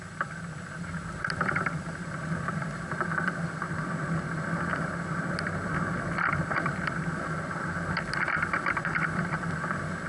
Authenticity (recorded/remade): remade